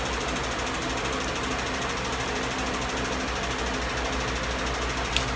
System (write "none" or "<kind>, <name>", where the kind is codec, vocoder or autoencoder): none